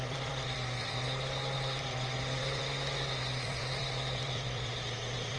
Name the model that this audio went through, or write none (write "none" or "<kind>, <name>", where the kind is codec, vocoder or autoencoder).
vocoder, BigVGAN v2